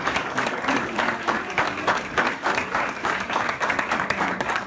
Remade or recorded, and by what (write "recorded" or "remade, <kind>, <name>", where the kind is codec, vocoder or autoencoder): remade, codec, DAC